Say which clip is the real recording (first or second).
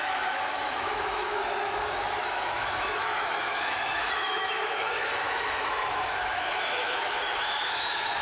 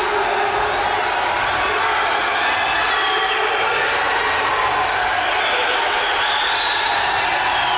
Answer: second